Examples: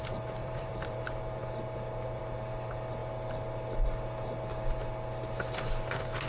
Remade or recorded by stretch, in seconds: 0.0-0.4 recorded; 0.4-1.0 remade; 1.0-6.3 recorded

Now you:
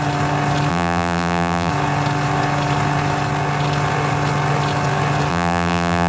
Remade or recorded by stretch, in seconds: 0.0-0.7 recorded; 0.7-1.7 remade; 1.7-5.3 recorded; 5.3-6.1 remade

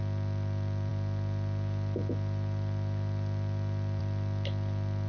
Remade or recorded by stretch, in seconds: 0.0-5.1 recorded

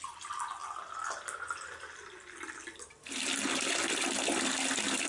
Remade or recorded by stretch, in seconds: 0.0-5.1 recorded

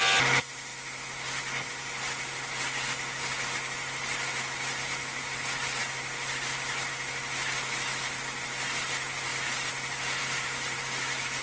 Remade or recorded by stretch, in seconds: 0.0-11.4 recorded